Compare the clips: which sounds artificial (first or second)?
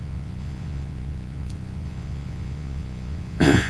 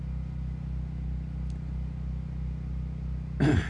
first